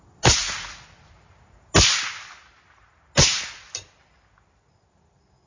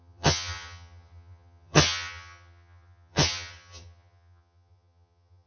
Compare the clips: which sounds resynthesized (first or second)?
second